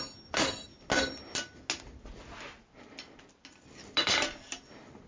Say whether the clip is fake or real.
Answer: real